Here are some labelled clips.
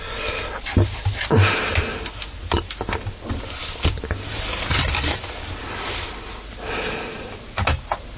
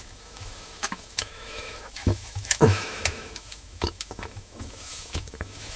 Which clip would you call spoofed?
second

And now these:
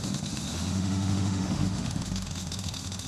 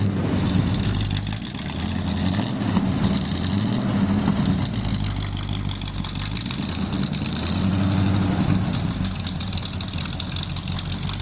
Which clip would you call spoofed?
first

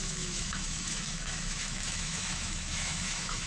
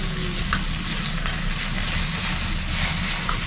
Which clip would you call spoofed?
first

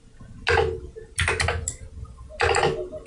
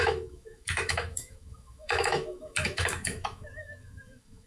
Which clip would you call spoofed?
second